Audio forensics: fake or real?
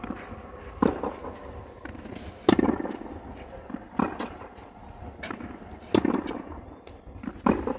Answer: real